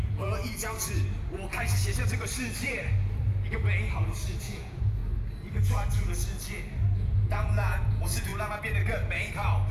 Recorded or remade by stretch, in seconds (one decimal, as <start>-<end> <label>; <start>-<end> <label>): 0.0-0.4 remade; 0.4-4.4 recorded; 4.4-5.0 remade; 5.0-7.0 recorded; 7.0-8.3 remade; 8.3-9.7 recorded